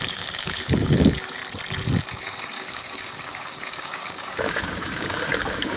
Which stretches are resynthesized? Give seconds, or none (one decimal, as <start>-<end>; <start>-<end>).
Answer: 0.0-1.4; 2.1-5.8